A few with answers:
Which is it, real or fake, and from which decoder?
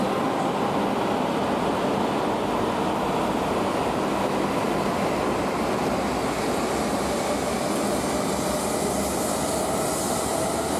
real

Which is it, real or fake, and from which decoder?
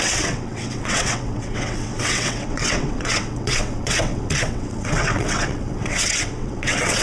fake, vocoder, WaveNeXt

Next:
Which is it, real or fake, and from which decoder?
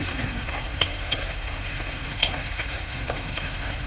fake, codec, SNAC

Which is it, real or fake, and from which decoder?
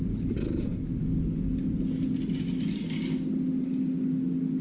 real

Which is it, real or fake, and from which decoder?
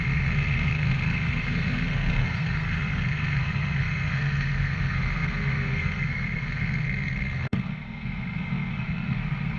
fake, codec, SNAC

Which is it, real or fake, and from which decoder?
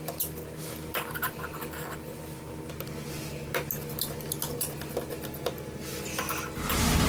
real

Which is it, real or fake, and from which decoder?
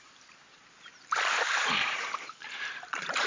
fake, vocoder, BigVGAN v2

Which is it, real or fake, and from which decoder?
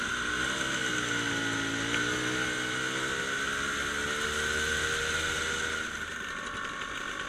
real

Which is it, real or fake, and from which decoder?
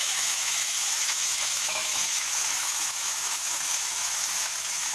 fake, autoencoder, DAC-VAE